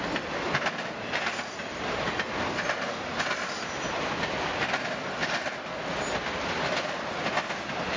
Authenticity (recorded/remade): recorded